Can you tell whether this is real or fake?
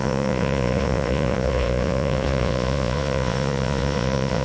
fake